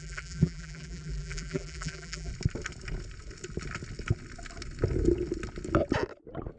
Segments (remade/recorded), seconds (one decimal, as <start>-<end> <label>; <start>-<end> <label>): 0.0-2.3 remade; 2.3-6.6 recorded